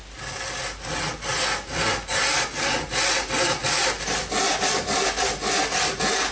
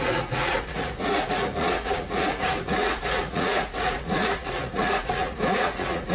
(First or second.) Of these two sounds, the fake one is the second